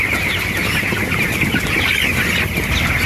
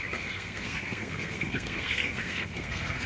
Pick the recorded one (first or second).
first